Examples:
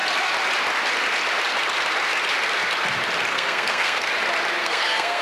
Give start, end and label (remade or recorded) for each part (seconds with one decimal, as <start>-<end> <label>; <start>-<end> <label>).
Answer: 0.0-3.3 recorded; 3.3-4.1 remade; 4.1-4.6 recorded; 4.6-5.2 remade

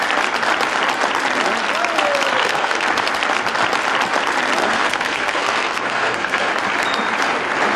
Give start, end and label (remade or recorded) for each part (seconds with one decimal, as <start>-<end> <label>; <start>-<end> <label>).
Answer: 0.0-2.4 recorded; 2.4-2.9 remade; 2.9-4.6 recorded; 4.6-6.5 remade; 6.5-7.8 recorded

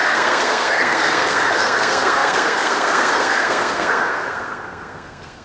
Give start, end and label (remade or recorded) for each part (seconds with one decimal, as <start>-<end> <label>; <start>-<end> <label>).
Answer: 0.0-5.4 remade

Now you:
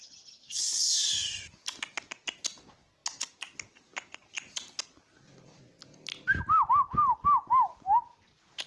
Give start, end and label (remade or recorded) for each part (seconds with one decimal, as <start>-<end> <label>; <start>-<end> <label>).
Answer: 0.0-0.4 recorded; 0.4-0.9 remade; 0.9-8.7 recorded

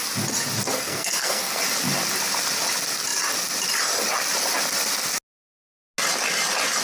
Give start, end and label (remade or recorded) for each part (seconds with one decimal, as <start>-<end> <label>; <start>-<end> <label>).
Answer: 0.0-0.7 recorded; 0.7-1.6 remade; 1.6-6.8 recorded

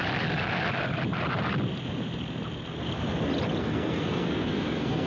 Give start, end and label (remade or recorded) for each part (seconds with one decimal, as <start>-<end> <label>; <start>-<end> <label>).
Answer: 0.0-3.6 recorded; 3.6-5.1 remade

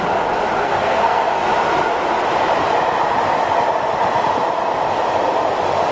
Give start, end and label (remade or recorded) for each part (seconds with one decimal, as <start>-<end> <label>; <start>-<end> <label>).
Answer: 0.0-0.6 recorded; 0.6-1.4 remade; 1.4-5.9 recorded